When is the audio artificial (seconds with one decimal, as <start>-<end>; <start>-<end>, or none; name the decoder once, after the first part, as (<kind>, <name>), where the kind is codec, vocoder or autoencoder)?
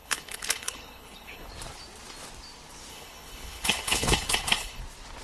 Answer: 0.0-1.5 (codec, HILCodec); 2.9-4.8